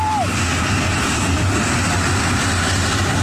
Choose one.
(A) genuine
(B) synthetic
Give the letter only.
A